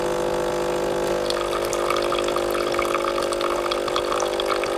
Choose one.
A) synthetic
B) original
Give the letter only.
B